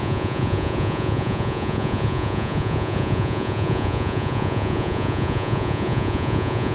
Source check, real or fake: fake